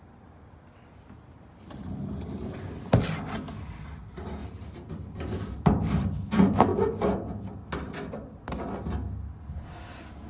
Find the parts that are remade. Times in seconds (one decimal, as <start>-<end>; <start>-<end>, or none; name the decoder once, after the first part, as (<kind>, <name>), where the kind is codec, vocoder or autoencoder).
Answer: 4.4-6.3 (vocoder, BigVGAN v2)